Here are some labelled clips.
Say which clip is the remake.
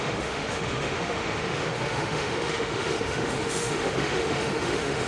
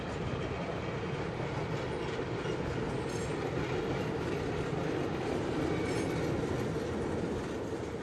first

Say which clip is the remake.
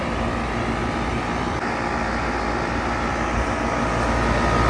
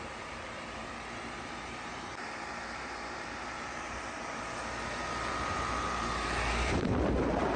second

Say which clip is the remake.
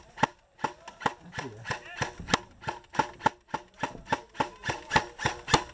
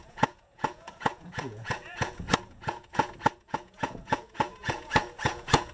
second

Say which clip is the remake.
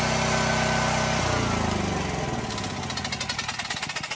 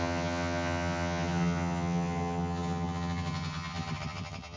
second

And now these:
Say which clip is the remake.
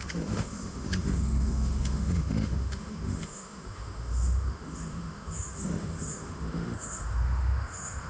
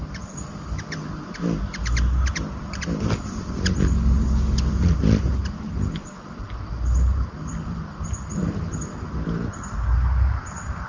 first